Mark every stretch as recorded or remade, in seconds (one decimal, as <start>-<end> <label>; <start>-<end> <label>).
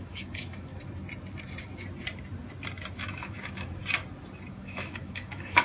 0.0-0.7 remade; 0.7-2.9 recorded; 2.9-3.8 remade; 3.8-4.5 recorded; 4.5-5.6 remade